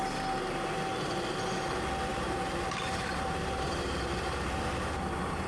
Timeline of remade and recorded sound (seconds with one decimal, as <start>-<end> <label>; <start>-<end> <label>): 0.0-2.1 recorded; 2.1-5.5 remade